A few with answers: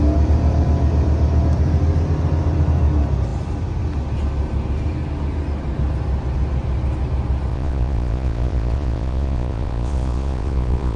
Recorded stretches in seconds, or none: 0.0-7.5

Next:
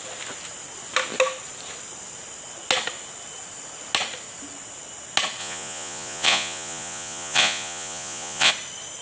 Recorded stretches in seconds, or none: 0.0-5.4; 8.5-9.0

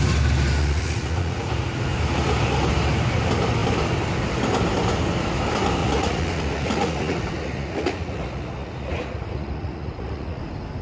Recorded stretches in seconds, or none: 0.0-0.6; 1.5-5.8; 10.4-10.8